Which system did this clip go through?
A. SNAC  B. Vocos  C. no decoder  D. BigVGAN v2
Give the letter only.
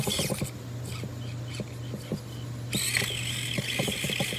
C